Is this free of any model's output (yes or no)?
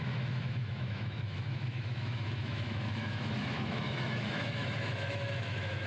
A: no